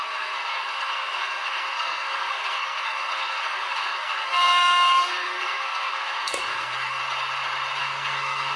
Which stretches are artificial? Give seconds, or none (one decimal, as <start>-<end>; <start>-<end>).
0.0-7.0; 7.8-8.6